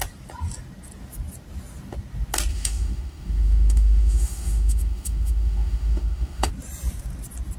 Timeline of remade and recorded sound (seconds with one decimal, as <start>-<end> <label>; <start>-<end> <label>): 0.0-2.5 recorded; 2.5-6.5 remade; 6.5-7.6 recorded